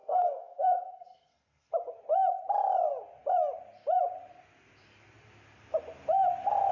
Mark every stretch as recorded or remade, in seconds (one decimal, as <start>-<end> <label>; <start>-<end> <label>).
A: 0.0-1.7 remade; 1.7-6.7 recorded